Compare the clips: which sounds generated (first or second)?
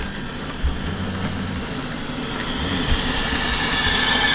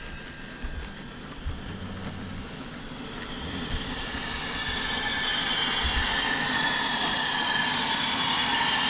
second